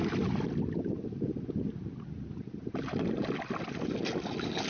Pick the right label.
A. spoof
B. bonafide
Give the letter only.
B